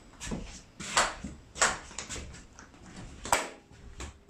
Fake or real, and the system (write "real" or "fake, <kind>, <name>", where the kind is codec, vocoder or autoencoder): real